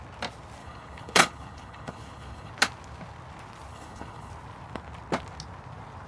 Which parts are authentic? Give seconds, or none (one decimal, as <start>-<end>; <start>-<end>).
0.0-0.6; 2.5-3.7; 4.3-6.1